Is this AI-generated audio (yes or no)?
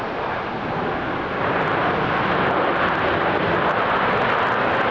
no